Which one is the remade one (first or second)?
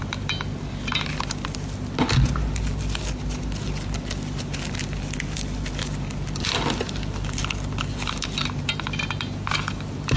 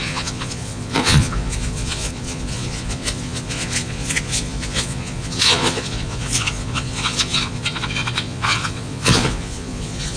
second